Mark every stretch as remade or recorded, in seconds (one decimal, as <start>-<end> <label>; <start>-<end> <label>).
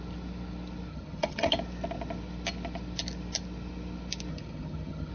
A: 0.0-0.9 recorded; 0.9-1.5 remade; 1.5-4.3 recorded; 4.3-5.1 remade